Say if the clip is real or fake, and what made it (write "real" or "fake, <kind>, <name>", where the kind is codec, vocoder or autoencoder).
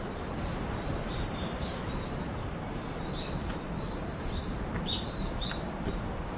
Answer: fake, vocoder, BigVGAN v2